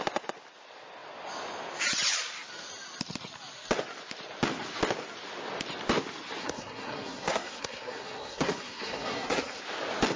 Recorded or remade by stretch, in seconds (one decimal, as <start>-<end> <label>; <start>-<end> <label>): 0.0-6.4 recorded; 6.4-9.6 remade; 9.6-10.2 recorded